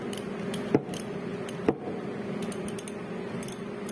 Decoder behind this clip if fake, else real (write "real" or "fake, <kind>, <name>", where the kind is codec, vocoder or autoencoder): real